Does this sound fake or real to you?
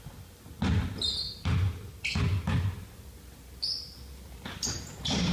real